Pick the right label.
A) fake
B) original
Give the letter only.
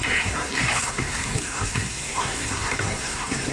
A